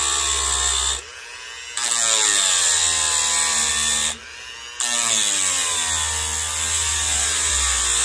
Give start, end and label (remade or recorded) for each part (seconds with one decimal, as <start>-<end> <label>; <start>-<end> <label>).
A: 0.0-6.9 recorded; 6.9-7.5 remade; 7.5-8.0 recorded